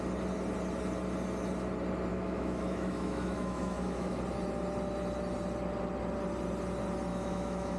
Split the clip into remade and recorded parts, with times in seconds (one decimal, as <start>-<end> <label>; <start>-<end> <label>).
0.0-2.1 recorded; 2.1-4.2 remade; 4.2-7.1 recorded; 7.1-7.8 remade